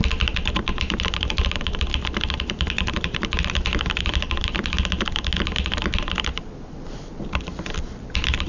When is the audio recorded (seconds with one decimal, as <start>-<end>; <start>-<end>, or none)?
0.0-8.5